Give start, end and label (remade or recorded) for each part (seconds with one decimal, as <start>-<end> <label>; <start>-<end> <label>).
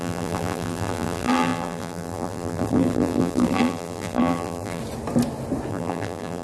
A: 0.0-4.8 remade; 4.8-5.7 recorded; 5.7-6.4 remade